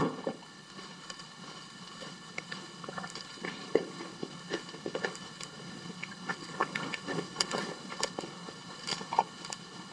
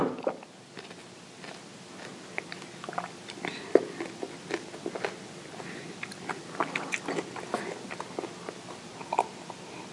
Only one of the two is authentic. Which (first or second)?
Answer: second